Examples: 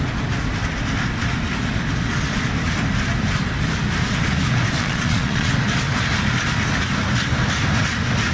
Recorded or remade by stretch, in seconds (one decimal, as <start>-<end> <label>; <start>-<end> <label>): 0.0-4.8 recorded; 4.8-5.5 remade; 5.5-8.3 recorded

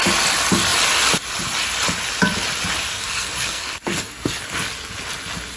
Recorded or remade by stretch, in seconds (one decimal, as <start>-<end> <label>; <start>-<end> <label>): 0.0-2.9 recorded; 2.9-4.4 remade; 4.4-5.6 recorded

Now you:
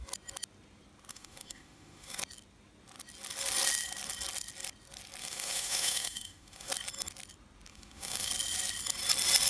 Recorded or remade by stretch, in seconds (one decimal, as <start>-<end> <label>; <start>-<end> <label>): 0.0-1.1 recorded; 1.1-2.2 remade; 2.2-5.2 recorded; 5.2-6.7 remade; 6.7-7.7 recorded; 7.7-8.3 remade; 8.3-9.5 recorded

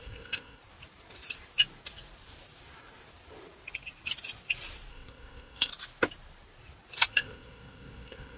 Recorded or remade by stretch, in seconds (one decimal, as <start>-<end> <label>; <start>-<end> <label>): 0.0-0.6 remade; 0.6-4.9 recorded; 4.9-5.7 remade; 5.7-7.1 recorded; 7.1-8.4 remade

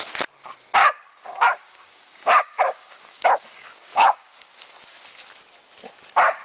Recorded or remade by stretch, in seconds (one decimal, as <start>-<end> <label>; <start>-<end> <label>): 0.0-0.8 recorded; 0.8-4.5 remade; 4.5-6.4 recorded

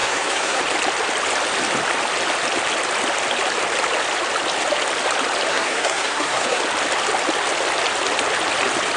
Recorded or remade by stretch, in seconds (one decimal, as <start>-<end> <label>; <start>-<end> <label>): 0.0-0.6 remade; 0.6-5.5 recorded; 5.5-6.6 remade; 6.6-9.0 recorded

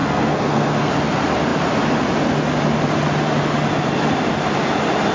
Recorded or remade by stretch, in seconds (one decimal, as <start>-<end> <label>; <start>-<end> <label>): 0.0-0.9 remade; 0.9-5.1 recorded